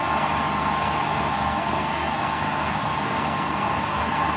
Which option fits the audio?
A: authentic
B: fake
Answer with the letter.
B